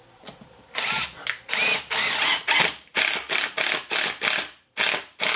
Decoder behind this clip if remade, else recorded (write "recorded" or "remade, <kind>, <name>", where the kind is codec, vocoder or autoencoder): recorded